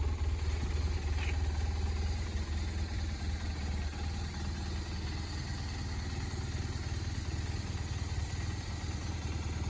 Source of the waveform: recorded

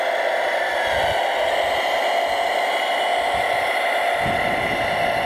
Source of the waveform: recorded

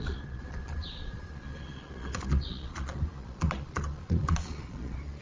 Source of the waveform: remade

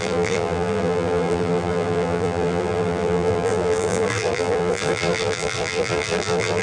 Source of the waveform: remade